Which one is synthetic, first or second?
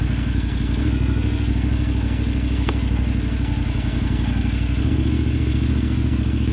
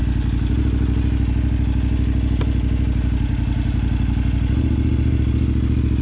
first